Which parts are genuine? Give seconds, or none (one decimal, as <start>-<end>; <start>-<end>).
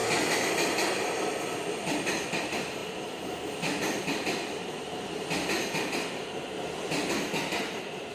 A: 0.0-8.1